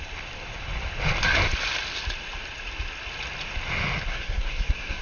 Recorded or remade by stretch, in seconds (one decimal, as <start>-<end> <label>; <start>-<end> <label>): 0.0-4.1 recorded; 4.1-5.0 remade